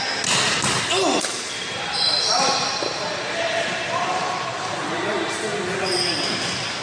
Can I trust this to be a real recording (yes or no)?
yes